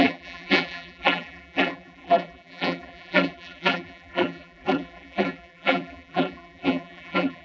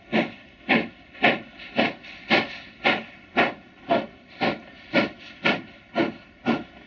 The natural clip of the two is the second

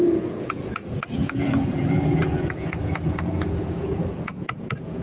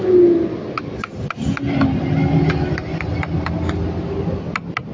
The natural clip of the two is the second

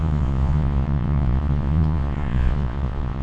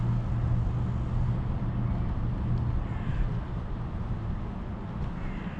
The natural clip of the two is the second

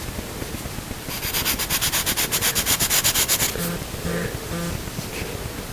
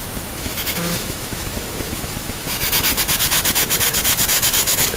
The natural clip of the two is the first